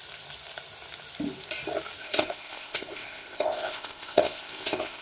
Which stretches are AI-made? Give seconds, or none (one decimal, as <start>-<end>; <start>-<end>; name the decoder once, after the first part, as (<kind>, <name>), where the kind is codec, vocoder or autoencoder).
2.0-5.0 (codec, ZipCodec)